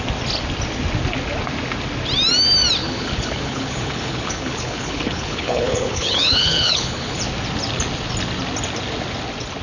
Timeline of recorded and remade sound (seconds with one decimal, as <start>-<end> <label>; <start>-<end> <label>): 0.0-2.8 recorded; 2.8-7.2 remade; 7.2-9.6 recorded